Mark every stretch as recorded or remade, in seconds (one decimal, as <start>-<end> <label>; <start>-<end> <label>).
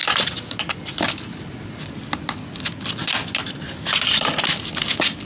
0.0-5.3 recorded